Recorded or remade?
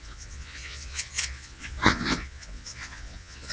remade